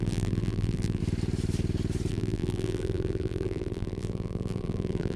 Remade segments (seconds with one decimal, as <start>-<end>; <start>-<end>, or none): 0.0-1.0; 2.1-5.2